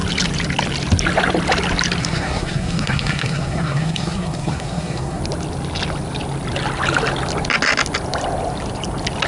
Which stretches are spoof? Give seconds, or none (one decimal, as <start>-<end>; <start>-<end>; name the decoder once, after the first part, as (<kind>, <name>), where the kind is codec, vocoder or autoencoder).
2.0-5.2 (codec, SNAC)

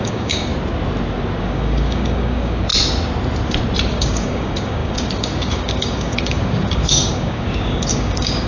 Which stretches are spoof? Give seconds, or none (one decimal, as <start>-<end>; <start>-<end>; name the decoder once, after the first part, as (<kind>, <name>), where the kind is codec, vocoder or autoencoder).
0.0-0.5 (codec, DAC); 1.4-2.7; 3.9-8.5

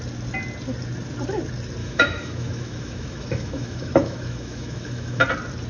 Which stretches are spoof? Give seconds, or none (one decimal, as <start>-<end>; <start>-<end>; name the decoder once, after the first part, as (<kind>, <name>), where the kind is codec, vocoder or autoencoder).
1.8-5.2 (autoencoder, DAC-VAE)